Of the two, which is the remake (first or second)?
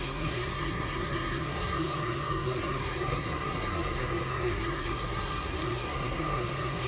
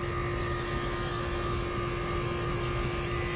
first